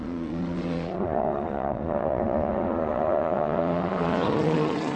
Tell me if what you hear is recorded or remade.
remade